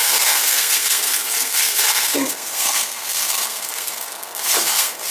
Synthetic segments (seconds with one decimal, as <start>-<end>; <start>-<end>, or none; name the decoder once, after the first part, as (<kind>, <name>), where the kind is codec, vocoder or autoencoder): 0.0-5.1 (codec, SNAC)